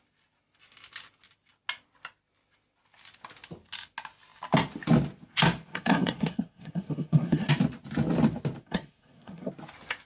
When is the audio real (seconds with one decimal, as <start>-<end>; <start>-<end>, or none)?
0.0-5.7; 7.5-8.6; 9.5-10.1